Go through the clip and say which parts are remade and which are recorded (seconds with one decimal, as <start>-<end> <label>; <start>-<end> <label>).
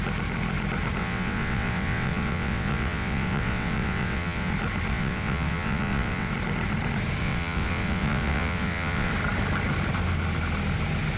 0.0-1.0 recorded; 1.0-4.5 remade; 4.5-4.9 recorded; 4.9-6.3 remade; 6.3-7.2 recorded; 7.2-9.1 remade; 9.1-11.2 recorded